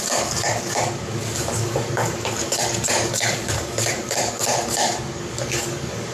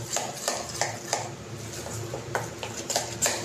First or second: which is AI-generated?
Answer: first